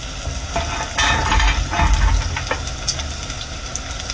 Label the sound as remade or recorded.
recorded